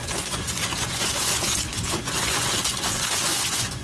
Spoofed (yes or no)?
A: yes